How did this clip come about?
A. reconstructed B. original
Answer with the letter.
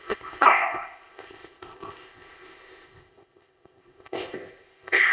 A